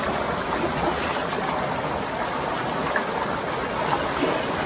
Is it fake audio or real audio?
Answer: real